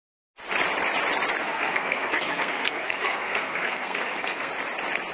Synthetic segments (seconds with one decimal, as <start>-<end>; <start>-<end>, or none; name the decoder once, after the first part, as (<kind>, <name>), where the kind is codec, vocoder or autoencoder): 1.4-4.5 (codec, SNAC)